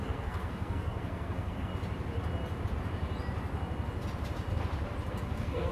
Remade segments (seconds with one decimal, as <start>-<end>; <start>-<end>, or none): 0.0-1.7; 5.1-5.7